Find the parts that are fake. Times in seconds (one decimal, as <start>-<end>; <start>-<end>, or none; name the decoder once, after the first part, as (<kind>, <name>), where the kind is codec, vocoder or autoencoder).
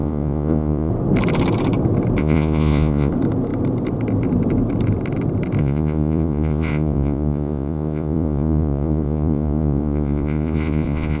0.0-0.9 (vocoder, Vocos); 2.2-3.1; 5.6-11.2